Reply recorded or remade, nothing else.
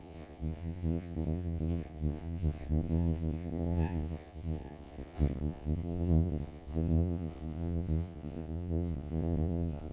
remade